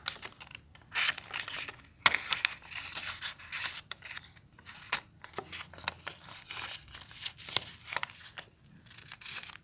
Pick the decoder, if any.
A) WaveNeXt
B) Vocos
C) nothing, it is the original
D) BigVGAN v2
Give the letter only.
C